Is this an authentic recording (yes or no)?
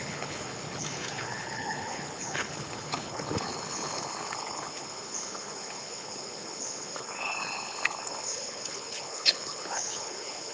no